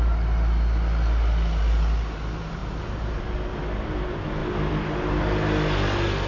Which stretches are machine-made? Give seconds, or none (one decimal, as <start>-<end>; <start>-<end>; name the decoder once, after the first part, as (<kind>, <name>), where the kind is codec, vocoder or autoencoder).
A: none